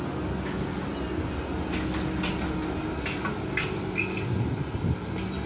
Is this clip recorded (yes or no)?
yes